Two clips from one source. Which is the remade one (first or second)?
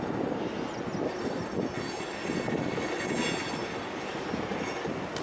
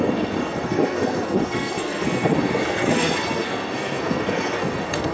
second